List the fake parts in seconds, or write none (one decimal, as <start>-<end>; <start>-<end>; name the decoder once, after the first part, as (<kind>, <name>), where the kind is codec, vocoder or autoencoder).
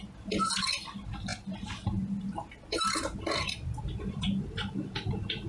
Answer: none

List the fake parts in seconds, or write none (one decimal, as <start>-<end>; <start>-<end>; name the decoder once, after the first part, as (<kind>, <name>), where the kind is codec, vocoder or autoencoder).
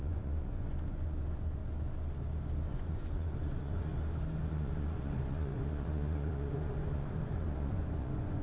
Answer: 0.0-1.6 (vocoder, Vocos); 2.7-3.9; 4.5-8.4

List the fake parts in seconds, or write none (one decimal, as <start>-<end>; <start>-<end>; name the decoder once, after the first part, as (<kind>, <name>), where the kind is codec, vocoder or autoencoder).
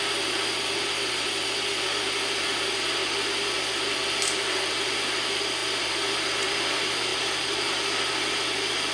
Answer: 7.1-8.0 (vocoder, BigVGAN v2)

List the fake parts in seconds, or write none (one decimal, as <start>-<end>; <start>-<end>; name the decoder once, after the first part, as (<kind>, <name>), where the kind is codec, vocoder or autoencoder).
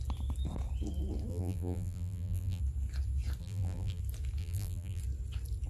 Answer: 1.3-2.6 (vocoder, BigVGAN v2); 3.4-4.0; 4.4-5.0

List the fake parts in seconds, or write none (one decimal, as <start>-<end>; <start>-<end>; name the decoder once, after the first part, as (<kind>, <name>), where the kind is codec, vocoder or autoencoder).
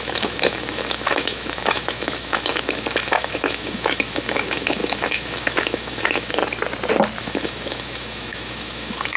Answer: 0.0-6.4 (autoencoder, DAC-VAE); 7.2-9.2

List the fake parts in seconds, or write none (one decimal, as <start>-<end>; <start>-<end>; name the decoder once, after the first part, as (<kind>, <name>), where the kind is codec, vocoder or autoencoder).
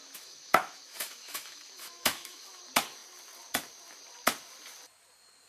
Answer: 0.0-2.6 (autoencoder, DAC-VAE)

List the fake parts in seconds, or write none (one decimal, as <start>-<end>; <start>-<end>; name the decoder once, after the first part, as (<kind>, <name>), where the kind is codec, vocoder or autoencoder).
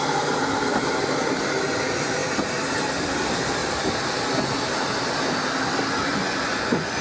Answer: 6.1-7.0 (vocoder, Vocos)